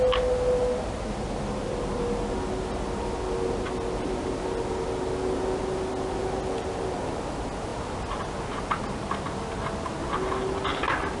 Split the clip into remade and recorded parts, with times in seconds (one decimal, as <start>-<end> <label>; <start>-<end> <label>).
0.0-11.2 recorded